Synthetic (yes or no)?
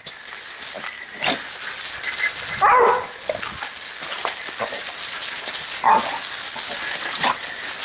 no